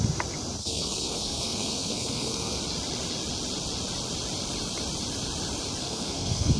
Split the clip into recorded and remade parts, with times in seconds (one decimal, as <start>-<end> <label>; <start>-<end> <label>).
0.0-0.6 recorded; 0.6-2.6 remade; 2.6-5.8 recorded; 5.8-6.6 remade